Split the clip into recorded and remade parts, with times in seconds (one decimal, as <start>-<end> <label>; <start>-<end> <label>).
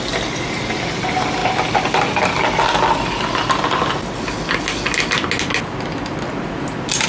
0.0-7.1 recorded